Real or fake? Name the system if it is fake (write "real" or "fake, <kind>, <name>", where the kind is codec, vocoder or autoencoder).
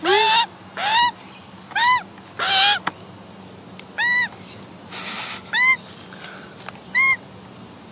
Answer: real